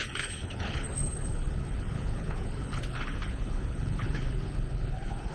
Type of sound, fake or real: fake